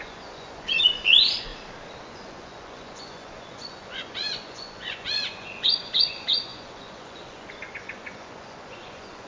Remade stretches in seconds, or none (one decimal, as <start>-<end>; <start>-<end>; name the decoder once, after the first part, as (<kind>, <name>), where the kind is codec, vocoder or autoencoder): 0.0-1.5 (vocoder, Vocos); 2.0-9.3